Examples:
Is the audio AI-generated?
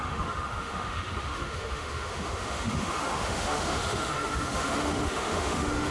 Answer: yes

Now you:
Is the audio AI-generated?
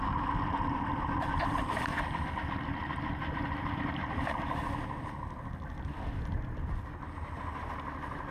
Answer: no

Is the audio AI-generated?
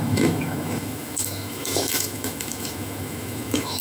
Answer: yes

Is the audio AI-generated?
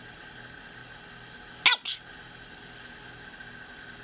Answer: no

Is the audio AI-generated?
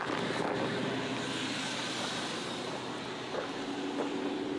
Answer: no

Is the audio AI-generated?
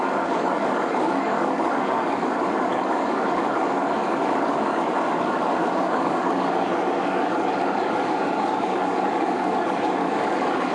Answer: yes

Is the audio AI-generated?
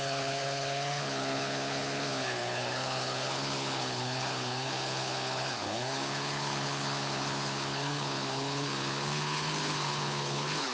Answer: yes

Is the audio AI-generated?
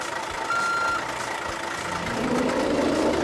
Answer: no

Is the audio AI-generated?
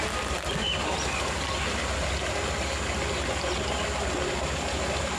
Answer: no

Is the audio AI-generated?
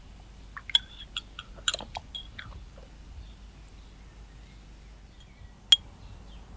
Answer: no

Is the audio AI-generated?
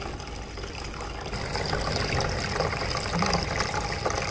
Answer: no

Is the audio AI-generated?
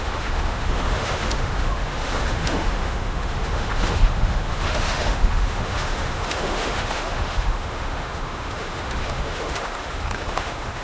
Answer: yes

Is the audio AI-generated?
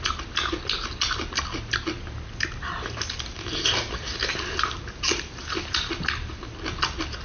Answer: no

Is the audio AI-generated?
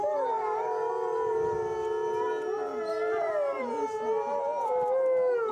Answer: no